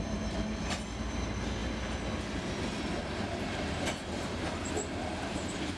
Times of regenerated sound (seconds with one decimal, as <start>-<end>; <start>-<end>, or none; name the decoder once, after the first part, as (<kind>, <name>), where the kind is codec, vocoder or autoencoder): none